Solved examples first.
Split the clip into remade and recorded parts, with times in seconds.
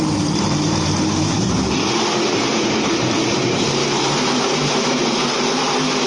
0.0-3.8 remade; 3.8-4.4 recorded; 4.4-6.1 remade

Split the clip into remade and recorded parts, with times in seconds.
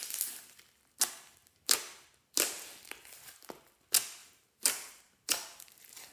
0.0-4.2 recorded; 4.2-5.6 remade; 5.6-6.1 recorded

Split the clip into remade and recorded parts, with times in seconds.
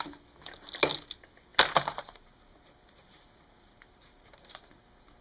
0.0-1.5 recorded; 1.5-4.6 remade; 4.6-5.2 recorded